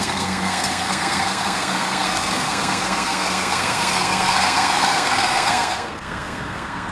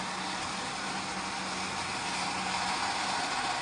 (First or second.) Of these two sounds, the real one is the second